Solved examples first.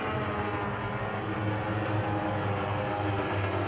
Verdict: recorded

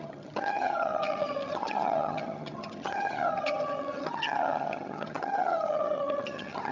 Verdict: remade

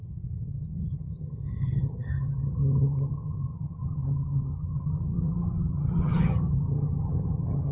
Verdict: remade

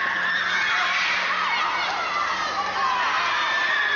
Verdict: recorded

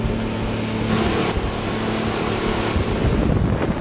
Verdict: recorded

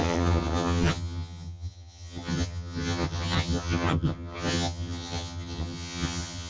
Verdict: remade